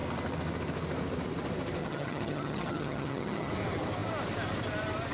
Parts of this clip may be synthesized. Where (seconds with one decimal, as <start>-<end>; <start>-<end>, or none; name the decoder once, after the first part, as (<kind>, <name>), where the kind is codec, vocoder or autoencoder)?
1.8-3.5 (vocoder, HiFi-GAN)